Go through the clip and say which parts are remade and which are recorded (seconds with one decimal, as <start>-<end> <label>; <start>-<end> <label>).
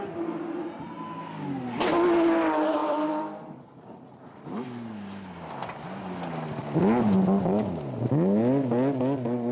0.0-2.8 recorded; 2.8-4.0 remade; 4.0-9.5 recorded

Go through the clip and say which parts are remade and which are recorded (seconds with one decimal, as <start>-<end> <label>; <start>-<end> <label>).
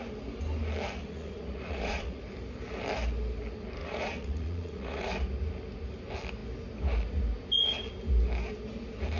0.0-1.0 recorded; 1.0-2.2 remade; 2.2-3.8 recorded; 3.8-5.1 remade; 5.1-9.2 recorded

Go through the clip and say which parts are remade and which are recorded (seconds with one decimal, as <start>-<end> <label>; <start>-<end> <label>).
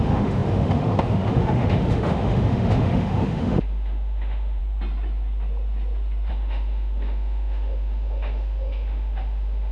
0.0-4.6 remade; 4.6-6.3 recorded; 6.3-9.7 remade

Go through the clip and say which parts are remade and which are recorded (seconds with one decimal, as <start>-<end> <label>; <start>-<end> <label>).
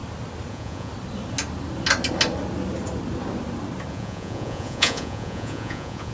0.0-0.5 recorded; 0.5-0.9 remade; 0.9-3.9 recorded; 3.9-6.1 remade